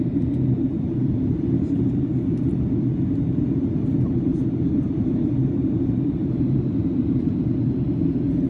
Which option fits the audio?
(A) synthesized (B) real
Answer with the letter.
A